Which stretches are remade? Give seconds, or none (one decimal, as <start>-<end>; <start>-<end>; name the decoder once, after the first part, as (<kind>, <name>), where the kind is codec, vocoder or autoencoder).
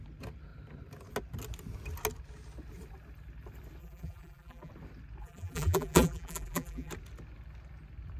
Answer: 3.8-4.7 (vocoder, BigVGAN v2); 5.2-6.9